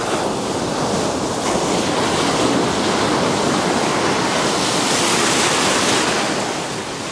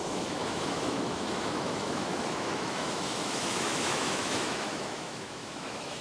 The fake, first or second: second